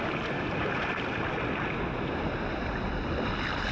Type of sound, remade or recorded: recorded